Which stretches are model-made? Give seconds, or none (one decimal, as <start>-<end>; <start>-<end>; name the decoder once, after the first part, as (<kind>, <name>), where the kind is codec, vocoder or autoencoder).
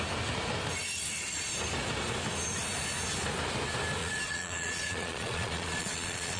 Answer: 4.0-6.4 (vocoder, Vocos)